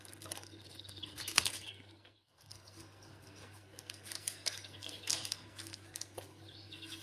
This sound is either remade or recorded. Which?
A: remade